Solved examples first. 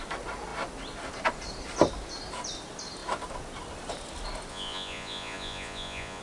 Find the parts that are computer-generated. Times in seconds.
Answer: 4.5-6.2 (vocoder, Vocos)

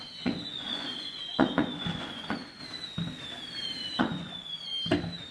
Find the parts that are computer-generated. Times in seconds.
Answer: 0.0-2.6 (vocoder, Vocos); 4.0-4.7

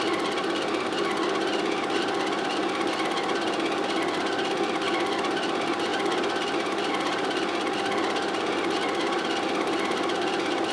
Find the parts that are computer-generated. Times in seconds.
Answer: none

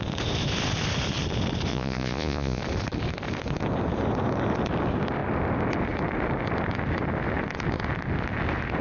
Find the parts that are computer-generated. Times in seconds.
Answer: 1.7-2.6 (vocoder, Vocos)

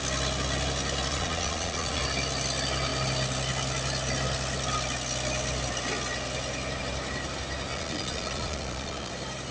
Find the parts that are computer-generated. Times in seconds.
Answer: 1.1-2.0 (vocoder, Vocos); 7.7-9.1

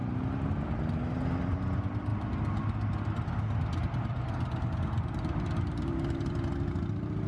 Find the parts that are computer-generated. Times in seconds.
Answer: none

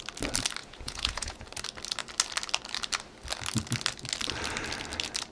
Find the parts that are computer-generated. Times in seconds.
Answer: 0.6-1.4 (vocoder, Vocos)